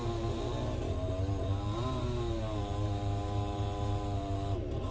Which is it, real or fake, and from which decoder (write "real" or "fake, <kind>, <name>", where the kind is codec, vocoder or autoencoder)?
fake, vocoder, BigVGAN v2